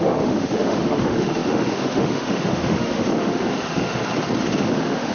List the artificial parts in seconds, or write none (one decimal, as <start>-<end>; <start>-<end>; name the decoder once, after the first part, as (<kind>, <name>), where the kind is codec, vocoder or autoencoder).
0.0-4.0 (autoencoder, DAC-VAE); 4.6-5.1